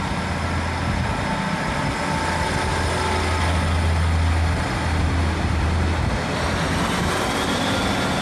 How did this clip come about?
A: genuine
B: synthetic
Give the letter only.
A